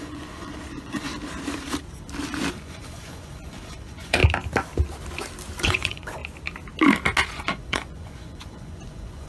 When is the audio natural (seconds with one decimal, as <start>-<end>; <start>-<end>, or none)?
1.1-2.5; 4.2-5.6; 6.2-7.3